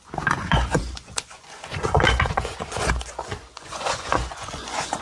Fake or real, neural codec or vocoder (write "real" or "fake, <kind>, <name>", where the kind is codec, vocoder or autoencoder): fake, vocoder, Vocos